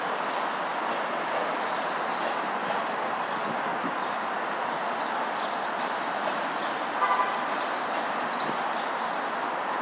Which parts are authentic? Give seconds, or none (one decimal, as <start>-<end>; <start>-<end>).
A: 0.0-9.8